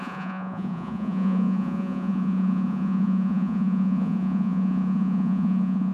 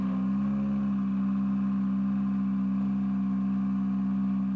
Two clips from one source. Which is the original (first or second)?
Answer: second